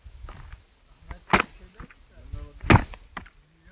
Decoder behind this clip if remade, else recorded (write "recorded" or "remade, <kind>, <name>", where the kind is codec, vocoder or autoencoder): recorded